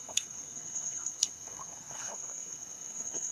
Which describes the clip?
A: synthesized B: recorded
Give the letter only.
A